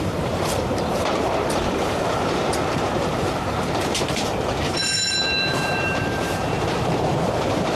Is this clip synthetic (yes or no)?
yes